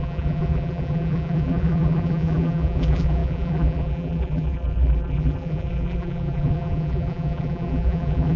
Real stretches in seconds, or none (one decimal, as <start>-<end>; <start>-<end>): none